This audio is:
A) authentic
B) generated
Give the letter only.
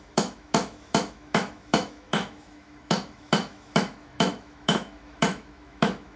B